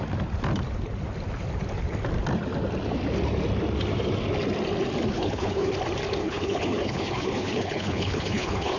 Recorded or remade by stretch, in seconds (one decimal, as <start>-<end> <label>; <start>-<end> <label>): 0.0-5.1 recorded; 5.1-5.7 remade; 5.7-6.2 recorded; 6.2-8.8 remade